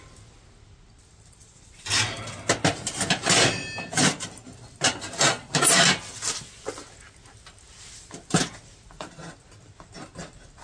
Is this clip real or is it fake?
real